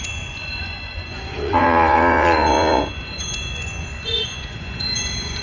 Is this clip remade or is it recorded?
remade